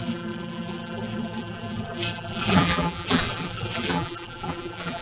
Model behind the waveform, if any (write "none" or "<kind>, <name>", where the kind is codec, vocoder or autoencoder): vocoder, BigVGAN v2